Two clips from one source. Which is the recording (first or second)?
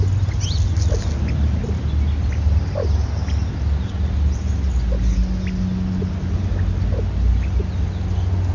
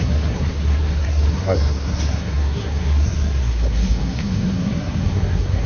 first